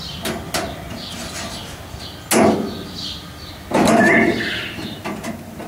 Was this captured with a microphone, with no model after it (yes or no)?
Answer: yes